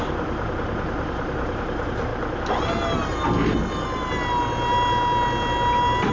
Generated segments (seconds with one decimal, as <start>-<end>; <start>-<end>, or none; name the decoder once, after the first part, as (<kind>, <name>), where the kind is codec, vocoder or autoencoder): 0.0-2.1 (vocoder, BigVGAN v2)